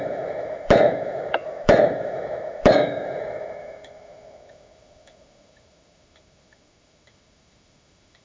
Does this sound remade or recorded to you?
remade